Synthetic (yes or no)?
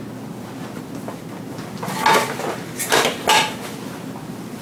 no